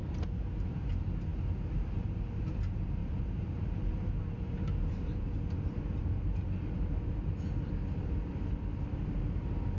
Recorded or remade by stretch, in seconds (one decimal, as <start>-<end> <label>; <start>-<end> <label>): 0.0-0.9 remade; 0.9-3.0 recorded; 3.0-7.3 remade; 7.3-9.8 recorded